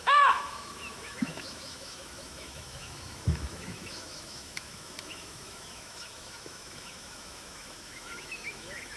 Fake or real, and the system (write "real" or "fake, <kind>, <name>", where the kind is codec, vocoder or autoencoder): fake, autoencoder, DAC-VAE